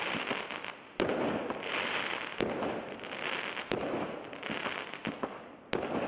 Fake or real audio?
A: real